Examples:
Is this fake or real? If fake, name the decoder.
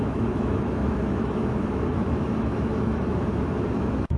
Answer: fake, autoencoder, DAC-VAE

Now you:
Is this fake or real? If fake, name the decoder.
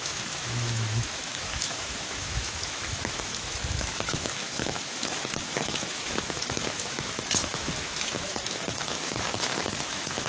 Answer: fake, autoencoder, DAC-VAE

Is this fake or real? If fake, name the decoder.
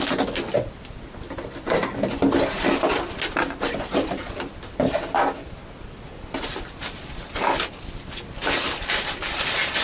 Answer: real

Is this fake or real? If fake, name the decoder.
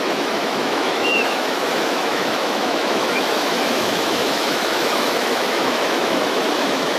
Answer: fake, autoencoder, DAC-VAE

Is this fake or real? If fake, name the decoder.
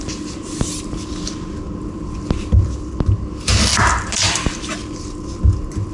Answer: real